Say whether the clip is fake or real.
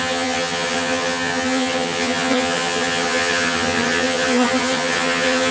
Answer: fake